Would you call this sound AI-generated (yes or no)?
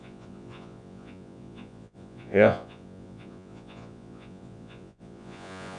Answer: yes